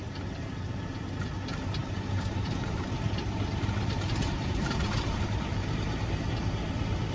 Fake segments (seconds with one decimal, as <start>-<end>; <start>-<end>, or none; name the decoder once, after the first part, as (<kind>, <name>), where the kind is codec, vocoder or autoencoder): 1.8-6.1 (vocoder, BigVGAN v2)